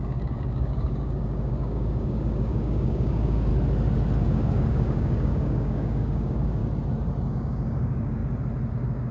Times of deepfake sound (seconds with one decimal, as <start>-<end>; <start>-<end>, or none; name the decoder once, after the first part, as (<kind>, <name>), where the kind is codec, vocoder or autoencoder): 0.0-3.5 (codec, DAC); 4.2-6.6; 7.3-8.2; 8.7-9.1